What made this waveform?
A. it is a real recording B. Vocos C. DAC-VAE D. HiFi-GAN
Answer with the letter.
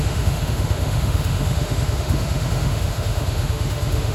C